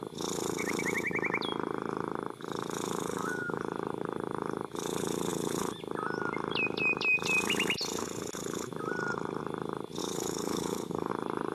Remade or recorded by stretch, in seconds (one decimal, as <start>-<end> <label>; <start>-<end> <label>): 0.0-3.1 recorded; 3.1-3.6 remade; 3.6-10.0 recorded; 10.0-11.1 remade; 11.1-11.5 recorded

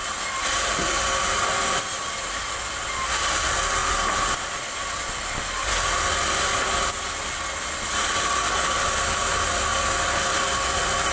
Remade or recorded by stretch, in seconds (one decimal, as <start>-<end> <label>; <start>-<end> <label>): 0.0-11.1 recorded

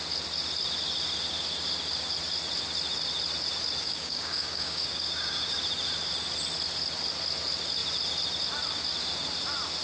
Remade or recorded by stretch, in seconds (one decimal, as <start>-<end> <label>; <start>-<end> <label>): 0.0-3.8 recorded; 3.8-5.6 remade; 5.6-9.8 recorded

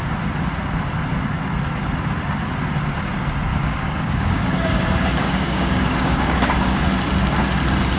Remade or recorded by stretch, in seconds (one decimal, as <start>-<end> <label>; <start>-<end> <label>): 0.0-3.5 recorded; 3.5-6.8 remade; 6.8-8.0 recorded

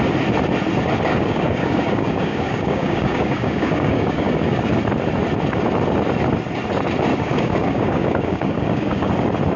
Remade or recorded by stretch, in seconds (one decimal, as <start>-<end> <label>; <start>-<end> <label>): 0.0-1.1 recorded; 1.1-4.7 remade; 4.7-7.1 recorded; 7.1-9.1 remade; 9.1-9.6 recorded

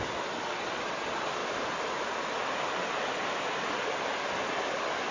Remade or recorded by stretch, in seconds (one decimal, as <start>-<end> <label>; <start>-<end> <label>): 0.0-5.1 recorded

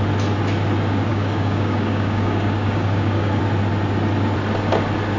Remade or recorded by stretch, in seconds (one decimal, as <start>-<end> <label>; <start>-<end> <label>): 0.0-1.1 recorded; 1.1-3.4 remade; 3.4-5.2 recorded